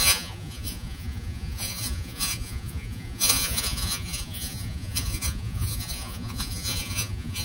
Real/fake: fake